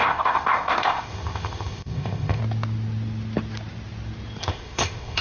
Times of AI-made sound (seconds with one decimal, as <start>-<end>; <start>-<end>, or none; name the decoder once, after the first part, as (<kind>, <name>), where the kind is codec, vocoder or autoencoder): 0.0-2.4 (codec, ZipCodec); 4.4-5.2